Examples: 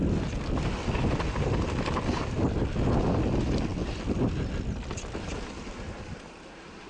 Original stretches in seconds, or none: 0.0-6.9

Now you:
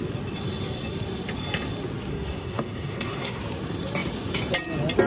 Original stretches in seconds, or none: 0.0-2.1; 3.4-5.1

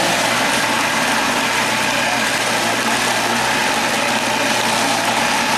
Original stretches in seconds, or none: 0.0-5.6